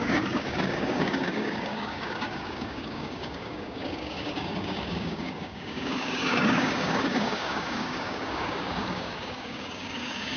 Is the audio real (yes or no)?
no